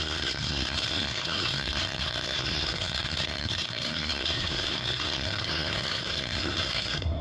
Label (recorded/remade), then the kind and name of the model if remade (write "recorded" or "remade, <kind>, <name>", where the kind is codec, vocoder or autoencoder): remade, codec, SNAC